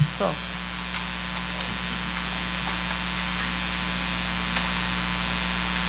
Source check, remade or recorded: recorded